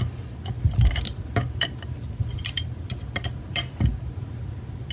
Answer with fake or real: fake